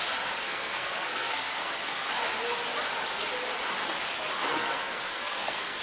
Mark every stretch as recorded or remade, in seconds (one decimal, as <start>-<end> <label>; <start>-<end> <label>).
0.0-0.4 recorded; 0.4-2.1 remade; 2.1-4.5 recorded; 4.5-5.8 remade